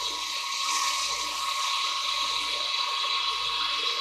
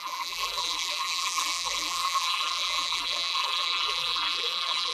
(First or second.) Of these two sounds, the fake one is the second